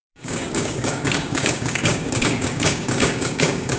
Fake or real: fake